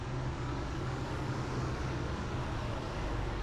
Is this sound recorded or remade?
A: remade